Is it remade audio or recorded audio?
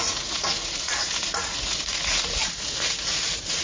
remade